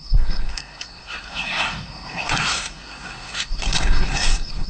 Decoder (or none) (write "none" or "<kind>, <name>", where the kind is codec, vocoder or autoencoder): codec, SNAC